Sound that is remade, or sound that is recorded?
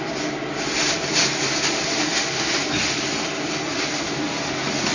recorded